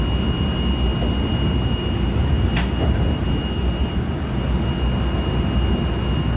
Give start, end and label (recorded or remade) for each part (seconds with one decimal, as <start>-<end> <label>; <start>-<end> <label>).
0.0-6.4 recorded